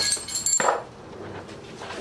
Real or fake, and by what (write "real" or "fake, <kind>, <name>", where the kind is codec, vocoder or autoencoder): real